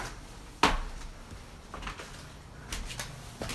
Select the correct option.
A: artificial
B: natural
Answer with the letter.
B